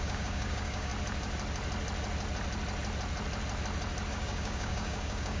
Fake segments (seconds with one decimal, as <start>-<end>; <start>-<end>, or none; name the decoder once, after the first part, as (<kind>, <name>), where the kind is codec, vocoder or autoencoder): 0.0-0.9 (codec, DAC); 4.1-5.4